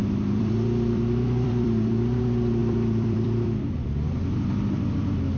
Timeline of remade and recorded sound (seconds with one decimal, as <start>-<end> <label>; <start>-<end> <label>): 0.0-2.2 remade; 2.2-2.6 recorded; 2.6-5.4 remade